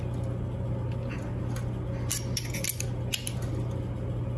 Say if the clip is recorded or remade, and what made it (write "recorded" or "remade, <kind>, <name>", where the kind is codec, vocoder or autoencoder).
recorded